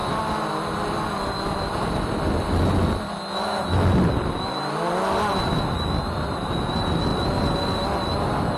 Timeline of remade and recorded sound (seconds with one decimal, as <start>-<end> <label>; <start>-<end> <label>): 0.0-8.6 recorded